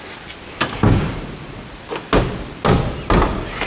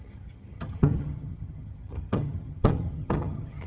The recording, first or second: first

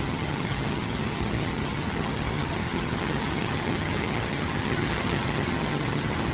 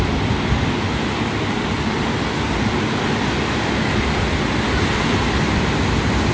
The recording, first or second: second